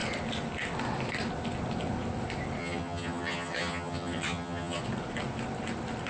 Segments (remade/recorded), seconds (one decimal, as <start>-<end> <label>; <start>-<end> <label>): 0.0-2.6 recorded; 2.6-4.8 remade; 4.8-6.1 recorded